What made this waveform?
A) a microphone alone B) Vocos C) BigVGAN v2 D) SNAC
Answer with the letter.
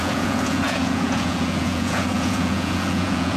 B